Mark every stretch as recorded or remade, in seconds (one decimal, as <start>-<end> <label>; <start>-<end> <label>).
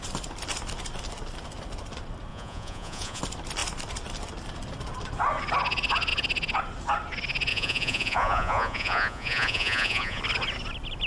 0.0-2.3 recorded; 2.3-3.2 remade; 3.2-7.5 recorded; 7.5-10.2 remade; 10.2-11.1 recorded